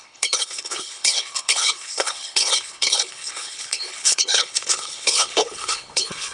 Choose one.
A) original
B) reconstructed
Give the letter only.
B